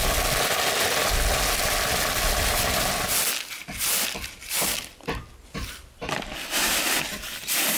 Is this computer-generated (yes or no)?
no